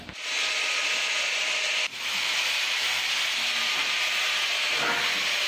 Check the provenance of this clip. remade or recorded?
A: recorded